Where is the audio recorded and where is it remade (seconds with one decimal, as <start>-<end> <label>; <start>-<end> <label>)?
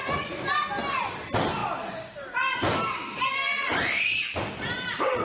0.0-5.2 recorded